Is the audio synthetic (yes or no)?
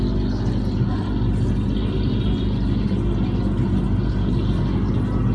no